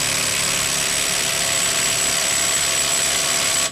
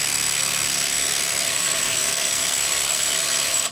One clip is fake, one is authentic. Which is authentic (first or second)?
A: first